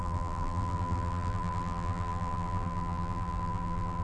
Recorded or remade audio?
remade